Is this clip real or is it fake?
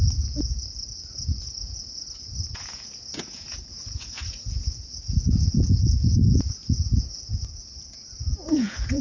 fake